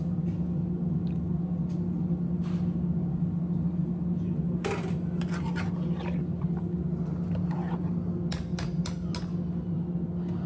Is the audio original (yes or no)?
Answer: yes